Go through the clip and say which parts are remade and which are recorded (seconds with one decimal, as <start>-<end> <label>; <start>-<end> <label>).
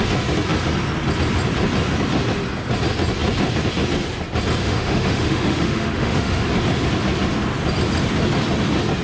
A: 0.0-4.6 recorded; 4.6-6.5 remade; 6.5-9.0 recorded